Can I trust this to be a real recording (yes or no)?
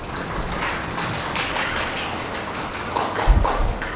no